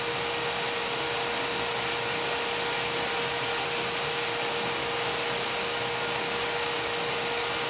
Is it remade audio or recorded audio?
recorded